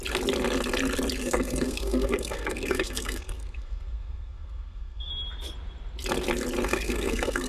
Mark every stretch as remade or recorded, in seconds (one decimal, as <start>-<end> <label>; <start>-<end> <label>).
0.0-1.2 recorded; 1.2-5.1 remade; 5.1-6.7 recorded; 6.7-7.5 remade